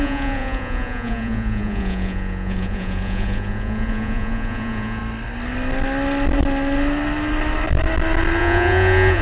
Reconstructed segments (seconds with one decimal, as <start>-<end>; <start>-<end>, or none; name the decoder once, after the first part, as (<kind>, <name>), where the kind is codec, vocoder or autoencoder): 0.0-5.0 (vocoder, Vocos); 8.4-9.2